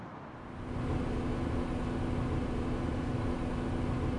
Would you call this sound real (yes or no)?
yes